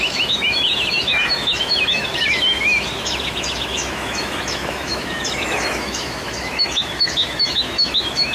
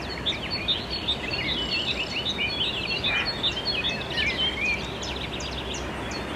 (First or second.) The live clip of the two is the second